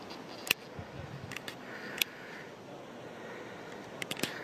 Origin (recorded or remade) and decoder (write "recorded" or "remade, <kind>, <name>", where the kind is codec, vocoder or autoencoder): recorded